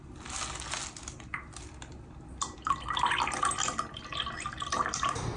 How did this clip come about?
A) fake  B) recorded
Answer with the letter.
B